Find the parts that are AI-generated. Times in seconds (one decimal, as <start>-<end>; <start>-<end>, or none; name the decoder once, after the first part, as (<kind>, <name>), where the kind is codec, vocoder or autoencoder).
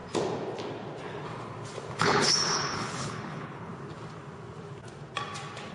2.0-3.7 (codec, HILCodec)